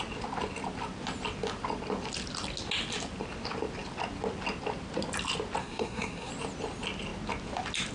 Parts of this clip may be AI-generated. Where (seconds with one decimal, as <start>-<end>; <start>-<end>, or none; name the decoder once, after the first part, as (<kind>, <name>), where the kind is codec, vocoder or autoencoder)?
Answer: 5.6-6.3 (codec, SNAC)